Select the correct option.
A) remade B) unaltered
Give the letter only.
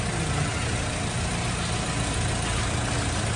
B